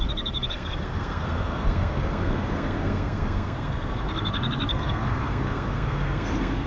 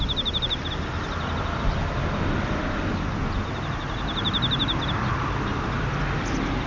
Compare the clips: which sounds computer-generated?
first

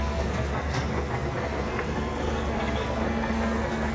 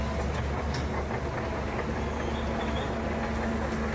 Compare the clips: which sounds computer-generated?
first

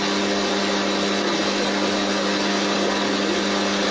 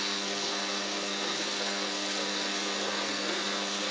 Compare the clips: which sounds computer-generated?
second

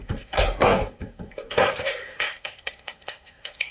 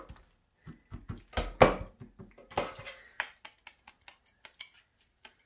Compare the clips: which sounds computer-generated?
first